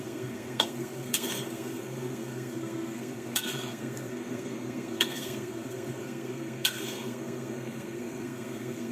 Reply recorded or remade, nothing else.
remade